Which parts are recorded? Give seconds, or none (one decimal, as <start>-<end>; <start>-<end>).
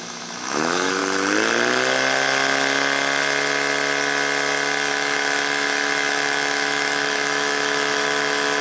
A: 1.0-4.9